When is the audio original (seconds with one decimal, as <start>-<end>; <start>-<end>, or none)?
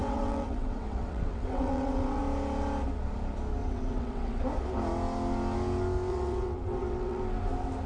2.2-3.6; 4.4-6.1; 7.2-7.9